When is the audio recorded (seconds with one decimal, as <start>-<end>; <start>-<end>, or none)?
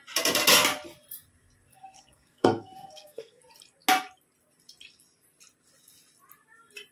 0.0-1.7; 3.4-6.9